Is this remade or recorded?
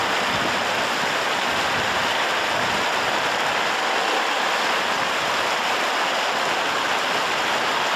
recorded